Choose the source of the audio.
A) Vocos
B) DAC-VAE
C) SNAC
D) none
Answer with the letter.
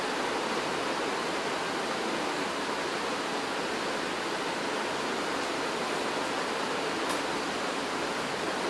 D